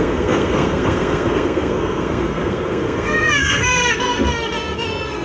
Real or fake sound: fake